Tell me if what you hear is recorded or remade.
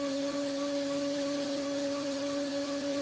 remade